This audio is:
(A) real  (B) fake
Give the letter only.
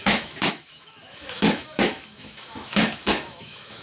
B